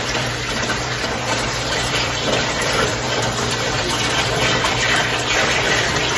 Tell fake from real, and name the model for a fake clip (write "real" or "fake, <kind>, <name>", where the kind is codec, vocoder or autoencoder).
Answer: fake, vocoder, BigVGAN v2